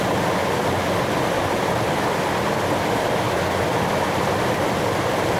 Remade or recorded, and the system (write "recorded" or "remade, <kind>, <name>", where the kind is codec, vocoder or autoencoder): recorded